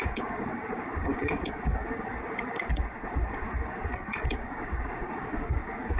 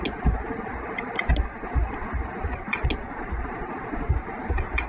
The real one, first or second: second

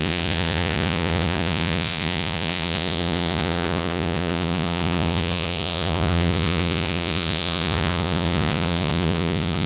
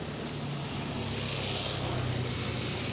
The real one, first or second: second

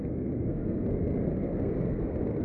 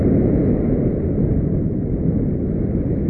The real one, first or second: second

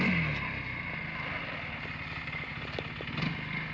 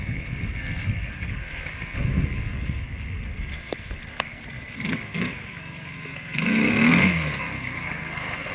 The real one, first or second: first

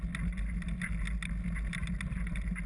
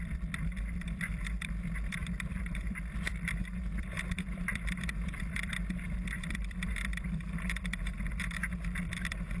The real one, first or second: first